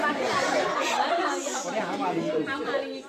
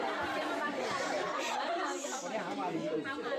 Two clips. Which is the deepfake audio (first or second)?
second